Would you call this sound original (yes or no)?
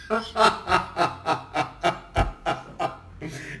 yes